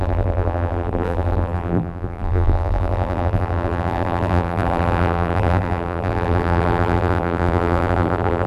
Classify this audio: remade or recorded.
remade